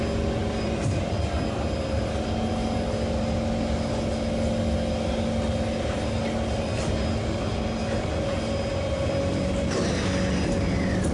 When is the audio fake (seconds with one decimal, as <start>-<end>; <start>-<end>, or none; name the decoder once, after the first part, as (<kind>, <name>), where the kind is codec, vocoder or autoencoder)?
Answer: 0.4-1.2 (vocoder, BigVGAN v2)